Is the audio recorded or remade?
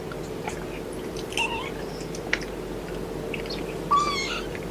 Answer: recorded